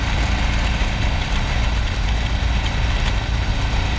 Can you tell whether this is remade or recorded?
recorded